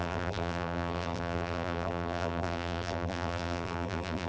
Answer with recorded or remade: remade